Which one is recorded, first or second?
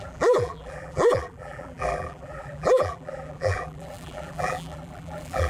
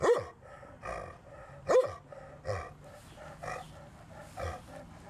second